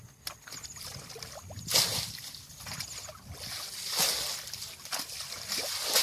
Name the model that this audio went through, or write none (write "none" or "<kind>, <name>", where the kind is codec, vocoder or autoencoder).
none